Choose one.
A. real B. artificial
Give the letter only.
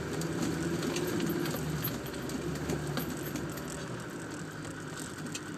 A